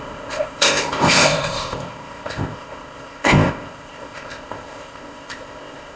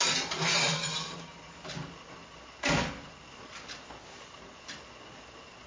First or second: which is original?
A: second